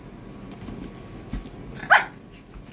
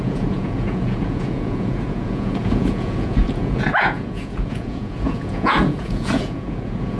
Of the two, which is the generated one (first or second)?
second